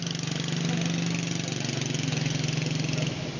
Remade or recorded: recorded